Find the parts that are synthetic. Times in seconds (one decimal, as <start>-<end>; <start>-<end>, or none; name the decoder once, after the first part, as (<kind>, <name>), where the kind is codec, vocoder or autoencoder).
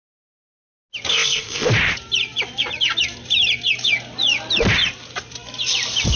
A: 1.1-1.7 (codec, ZipCodec)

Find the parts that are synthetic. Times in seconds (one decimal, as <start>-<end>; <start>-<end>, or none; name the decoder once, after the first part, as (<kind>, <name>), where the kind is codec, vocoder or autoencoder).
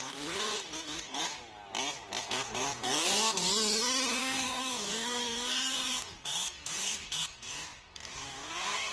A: 0.0-1.4 (codec, DAC); 2.2-3.5; 4.1-8.9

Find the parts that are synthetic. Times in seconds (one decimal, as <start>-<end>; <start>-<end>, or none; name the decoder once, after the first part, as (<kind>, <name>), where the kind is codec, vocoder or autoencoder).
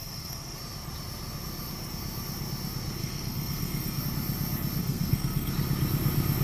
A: 0.0-0.6 (codec, SNAC); 3.0-4.0; 4.8-5.5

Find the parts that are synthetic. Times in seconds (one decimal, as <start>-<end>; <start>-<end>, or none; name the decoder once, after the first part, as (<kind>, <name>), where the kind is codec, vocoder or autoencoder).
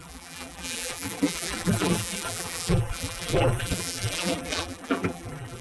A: 0.0-5.6 (vocoder, BigVGAN v2)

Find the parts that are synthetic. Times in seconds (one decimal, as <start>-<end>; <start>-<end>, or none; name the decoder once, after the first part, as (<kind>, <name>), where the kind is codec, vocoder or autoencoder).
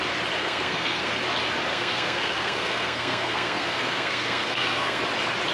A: 0.4-1.1 (codec, SNAC); 1.7-5.0